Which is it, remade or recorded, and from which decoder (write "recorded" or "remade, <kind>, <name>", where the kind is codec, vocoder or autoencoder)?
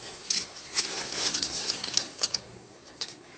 remade, codec, SNAC